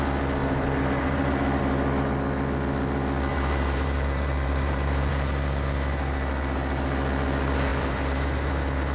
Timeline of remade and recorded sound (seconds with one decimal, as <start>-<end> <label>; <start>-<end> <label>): 0.0-0.4 recorded; 0.4-1.6 remade; 1.6-3.3 recorded; 3.3-5.1 remade; 5.1-7.7 recorded; 7.7-8.5 remade; 8.5-8.9 recorded